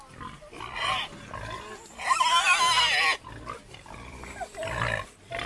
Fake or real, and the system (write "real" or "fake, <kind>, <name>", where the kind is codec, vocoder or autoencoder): real